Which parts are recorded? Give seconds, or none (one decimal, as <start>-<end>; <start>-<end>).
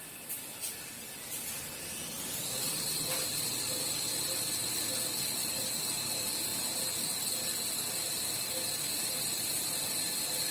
4.6-5.2; 6.5-8.9